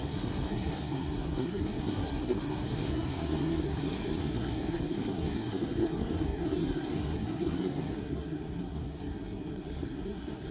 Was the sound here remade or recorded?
remade